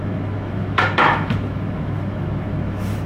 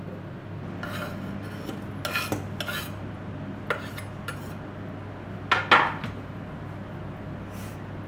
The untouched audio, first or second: second